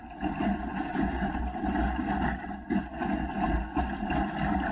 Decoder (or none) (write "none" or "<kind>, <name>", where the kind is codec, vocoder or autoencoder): none